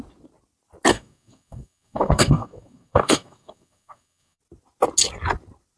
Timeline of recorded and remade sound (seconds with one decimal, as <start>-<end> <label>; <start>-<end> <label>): 0.0-0.9 recorded; 0.9-4.4 remade; 4.4-5.8 recorded